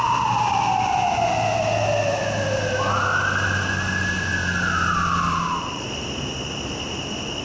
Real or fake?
real